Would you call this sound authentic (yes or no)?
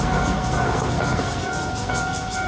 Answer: no